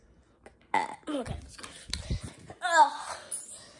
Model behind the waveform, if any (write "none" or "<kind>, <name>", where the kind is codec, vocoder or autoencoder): none